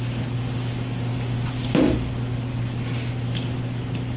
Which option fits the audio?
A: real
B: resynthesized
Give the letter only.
A